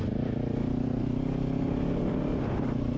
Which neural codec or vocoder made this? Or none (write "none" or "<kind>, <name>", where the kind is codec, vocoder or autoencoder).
none